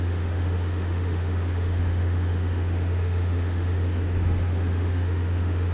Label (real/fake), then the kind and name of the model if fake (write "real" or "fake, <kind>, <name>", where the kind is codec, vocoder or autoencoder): fake, autoencoder, DAC-VAE